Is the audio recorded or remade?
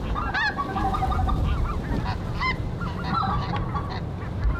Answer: recorded